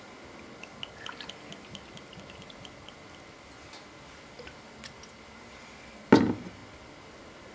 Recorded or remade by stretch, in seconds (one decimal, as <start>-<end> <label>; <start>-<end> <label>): 0.0-7.5 recorded